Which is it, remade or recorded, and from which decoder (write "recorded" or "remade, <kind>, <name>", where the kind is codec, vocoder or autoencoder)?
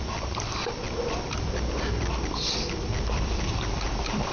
remade, vocoder, BigVGAN v2